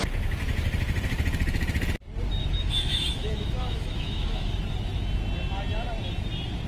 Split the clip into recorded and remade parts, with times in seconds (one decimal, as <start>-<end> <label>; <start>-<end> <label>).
0.0-2.4 recorded; 2.4-4.5 remade; 4.5-6.7 recorded